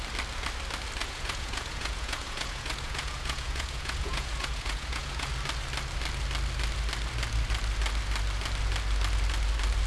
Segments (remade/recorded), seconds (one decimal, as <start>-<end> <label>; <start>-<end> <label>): 0.0-1.0 recorded; 1.0-5.3 remade; 5.3-9.9 recorded